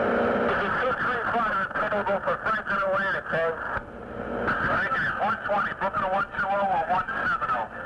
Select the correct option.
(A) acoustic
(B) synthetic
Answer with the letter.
A